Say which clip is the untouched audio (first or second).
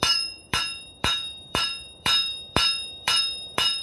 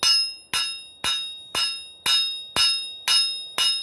second